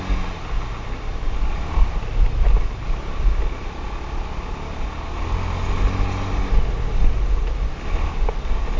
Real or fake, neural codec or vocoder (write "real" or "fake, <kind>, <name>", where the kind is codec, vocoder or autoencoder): real